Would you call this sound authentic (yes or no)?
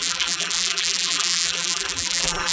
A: no